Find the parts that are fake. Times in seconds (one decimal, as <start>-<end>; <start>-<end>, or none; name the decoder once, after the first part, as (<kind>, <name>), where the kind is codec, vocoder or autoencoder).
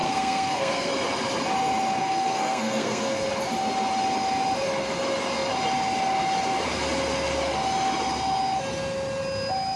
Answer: 0.0-0.9 (codec, SNAC); 2.0-3.3